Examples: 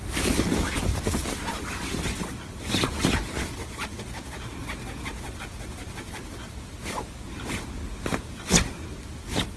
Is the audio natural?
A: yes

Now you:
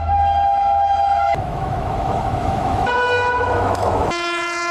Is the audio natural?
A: no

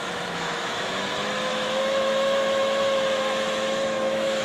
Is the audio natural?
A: no